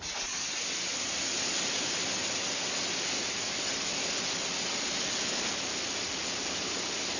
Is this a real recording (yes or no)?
yes